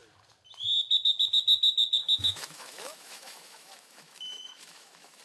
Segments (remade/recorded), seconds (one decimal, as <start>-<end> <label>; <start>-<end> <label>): 0.0-2.0 recorded; 2.0-5.2 remade